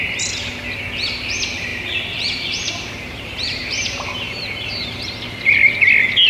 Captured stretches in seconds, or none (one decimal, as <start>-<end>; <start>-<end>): 0.0-1.7; 4.7-6.3